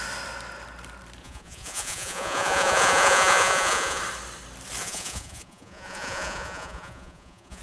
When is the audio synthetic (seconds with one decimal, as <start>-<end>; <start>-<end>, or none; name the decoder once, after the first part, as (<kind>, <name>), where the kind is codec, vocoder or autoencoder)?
1.2-4.0 (vocoder, Vocos); 4.8-7.6